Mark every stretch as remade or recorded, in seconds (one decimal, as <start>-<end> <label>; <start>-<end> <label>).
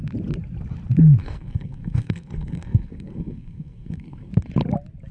0.0-1.2 recorded; 1.2-4.3 remade; 4.3-5.1 recorded